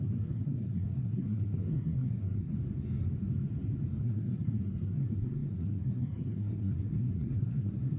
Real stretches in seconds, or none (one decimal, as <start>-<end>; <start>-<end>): 2.5-4.0